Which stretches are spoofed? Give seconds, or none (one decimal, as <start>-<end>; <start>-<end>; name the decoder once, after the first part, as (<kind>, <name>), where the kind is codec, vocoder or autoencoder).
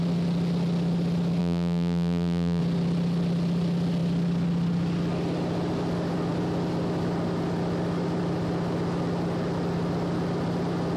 1.4-2.6 (vocoder, BigVGAN v2)